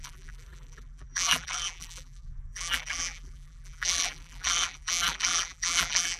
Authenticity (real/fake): fake